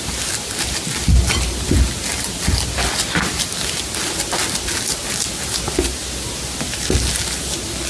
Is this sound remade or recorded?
recorded